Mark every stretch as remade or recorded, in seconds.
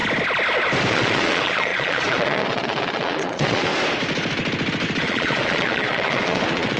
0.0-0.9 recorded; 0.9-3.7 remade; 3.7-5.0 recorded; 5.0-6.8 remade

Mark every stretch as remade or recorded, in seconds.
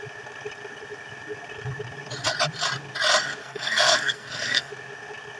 0.0-3.4 recorded; 3.4-4.7 remade; 4.7-5.4 recorded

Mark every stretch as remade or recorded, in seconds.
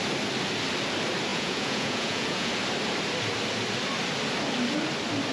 0.0-1.3 recorded; 1.3-2.5 remade; 2.5-5.3 recorded